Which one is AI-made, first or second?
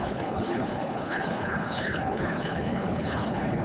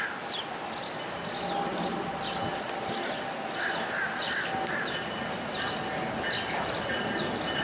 first